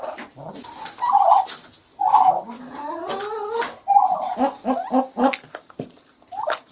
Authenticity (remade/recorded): recorded